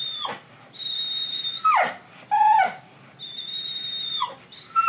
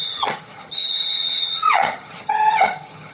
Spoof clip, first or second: second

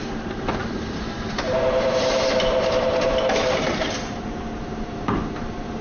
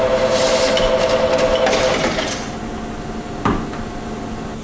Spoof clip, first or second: first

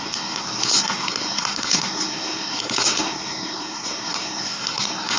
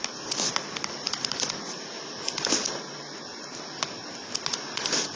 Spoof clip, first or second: first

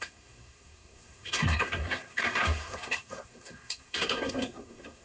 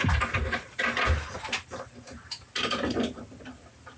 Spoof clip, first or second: first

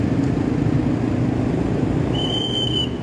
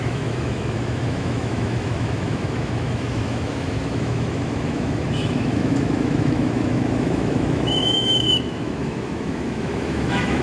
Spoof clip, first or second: second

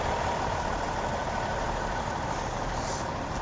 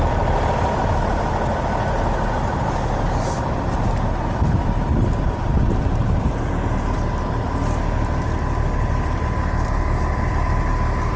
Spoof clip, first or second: first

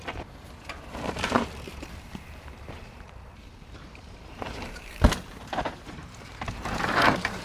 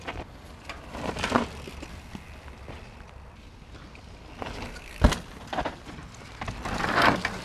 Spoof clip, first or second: first